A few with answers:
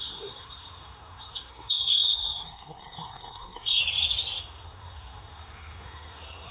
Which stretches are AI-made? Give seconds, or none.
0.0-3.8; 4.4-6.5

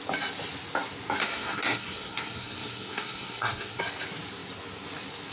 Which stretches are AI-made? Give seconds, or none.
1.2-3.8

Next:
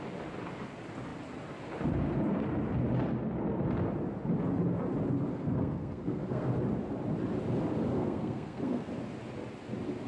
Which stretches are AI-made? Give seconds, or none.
5.3-6.5; 7.9-8.9

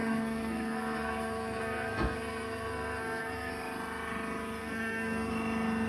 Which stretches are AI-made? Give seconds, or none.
0.0-3.5; 4.6-5.3

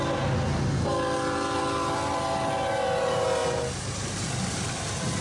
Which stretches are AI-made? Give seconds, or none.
none

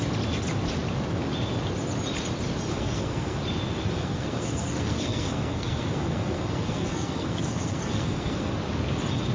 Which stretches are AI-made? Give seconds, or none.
2.7-3.4; 3.8-8.5

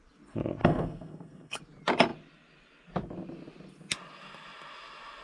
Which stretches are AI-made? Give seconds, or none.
0.6-1.6

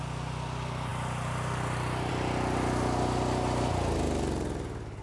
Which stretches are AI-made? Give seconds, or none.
none